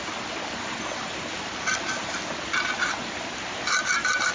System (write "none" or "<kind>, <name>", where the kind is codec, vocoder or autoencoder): none